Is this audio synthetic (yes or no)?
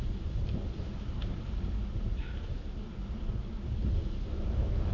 no